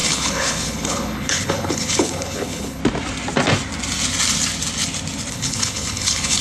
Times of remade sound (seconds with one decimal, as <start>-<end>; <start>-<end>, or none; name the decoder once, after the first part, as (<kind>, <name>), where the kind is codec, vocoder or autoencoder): 0.0-2.8 (codec, HILCodec); 5.3-6.4